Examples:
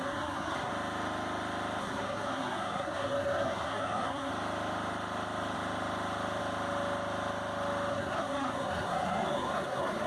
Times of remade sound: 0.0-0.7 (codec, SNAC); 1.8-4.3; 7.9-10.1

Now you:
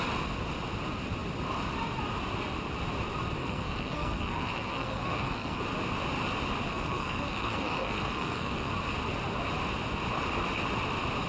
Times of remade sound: 3.4-5.6 (codec, SNAC); 6.7-8.7

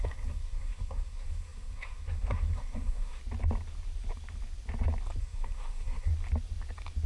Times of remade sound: 0.0-3.2 (codec, SNAC); 5.2-6.1

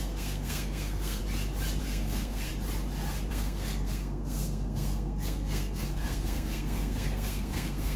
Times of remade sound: 0.0-1.2 (codec, SNAC); 1.8-2.5; 3.3-8.0